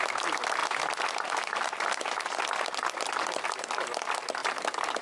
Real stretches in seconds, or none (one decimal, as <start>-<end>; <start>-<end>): 0.0-5.0